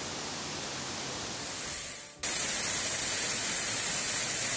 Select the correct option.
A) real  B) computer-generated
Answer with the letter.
A